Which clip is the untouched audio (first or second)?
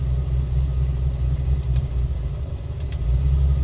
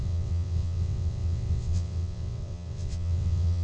first